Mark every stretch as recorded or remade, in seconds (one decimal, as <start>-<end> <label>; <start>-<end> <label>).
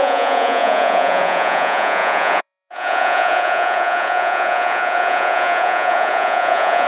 0.0-6.9 remade